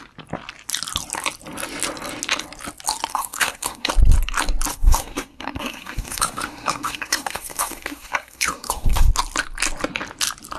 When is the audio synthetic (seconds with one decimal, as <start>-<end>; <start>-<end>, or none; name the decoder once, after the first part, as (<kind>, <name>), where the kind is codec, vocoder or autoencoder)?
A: 3.1-3.9 (codec, SNAC); 4.7-9.1

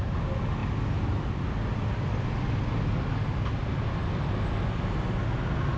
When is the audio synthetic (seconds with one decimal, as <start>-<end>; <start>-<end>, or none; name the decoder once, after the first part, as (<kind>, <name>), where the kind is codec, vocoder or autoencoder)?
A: none

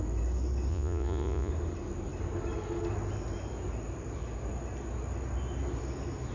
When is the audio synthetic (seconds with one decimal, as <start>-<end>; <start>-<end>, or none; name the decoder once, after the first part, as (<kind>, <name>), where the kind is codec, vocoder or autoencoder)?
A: 0.7-1.5 (vocoder, Vocos)

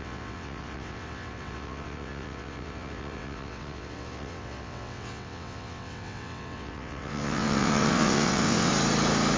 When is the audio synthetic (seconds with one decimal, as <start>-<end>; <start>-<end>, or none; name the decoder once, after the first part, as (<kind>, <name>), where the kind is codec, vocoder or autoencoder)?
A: 0.0-8.7 (vocoder, WaveNeXt)

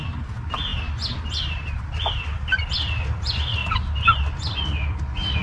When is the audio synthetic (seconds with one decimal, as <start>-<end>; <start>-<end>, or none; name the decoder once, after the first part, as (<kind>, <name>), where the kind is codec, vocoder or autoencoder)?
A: none

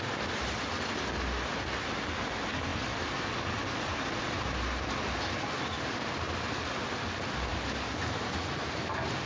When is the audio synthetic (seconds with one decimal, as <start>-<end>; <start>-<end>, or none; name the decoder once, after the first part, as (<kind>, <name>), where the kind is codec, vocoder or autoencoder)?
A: none

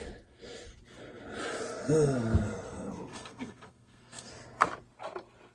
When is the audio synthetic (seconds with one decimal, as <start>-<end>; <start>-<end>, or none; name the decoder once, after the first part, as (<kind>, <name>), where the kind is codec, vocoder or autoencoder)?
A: 3.1-4.3 (codec, SNAC)

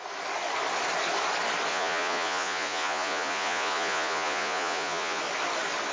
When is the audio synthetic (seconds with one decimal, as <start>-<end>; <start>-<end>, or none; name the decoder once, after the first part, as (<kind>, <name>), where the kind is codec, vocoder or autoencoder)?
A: 1.7-5.2 (vocoder, Vocos)